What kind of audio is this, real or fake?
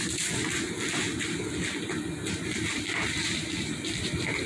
real